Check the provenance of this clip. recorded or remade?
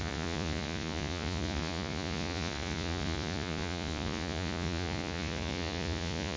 remade